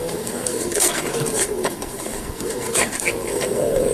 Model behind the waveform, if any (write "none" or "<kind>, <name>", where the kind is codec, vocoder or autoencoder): codec, SNAC